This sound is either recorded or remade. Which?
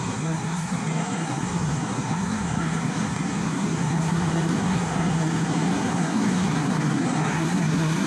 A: remade